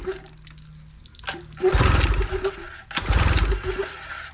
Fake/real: real